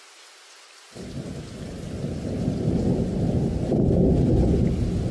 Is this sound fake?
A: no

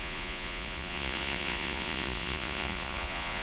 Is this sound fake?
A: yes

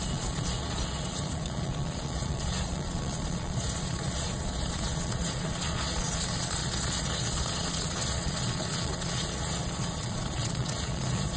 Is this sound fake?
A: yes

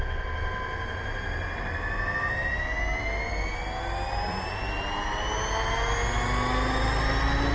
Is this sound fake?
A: no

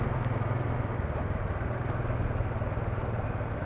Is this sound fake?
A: no